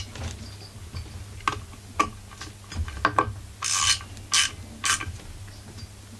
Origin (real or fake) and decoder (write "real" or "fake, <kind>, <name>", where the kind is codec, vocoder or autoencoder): real